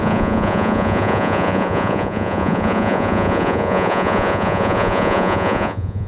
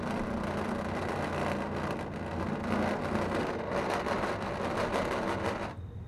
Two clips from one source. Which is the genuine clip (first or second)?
second